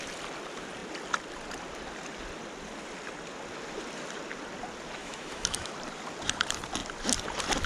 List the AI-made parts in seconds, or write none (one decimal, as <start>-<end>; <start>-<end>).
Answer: 5.0-5.7